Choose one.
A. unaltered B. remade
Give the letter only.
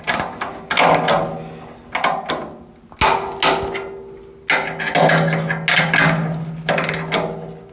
A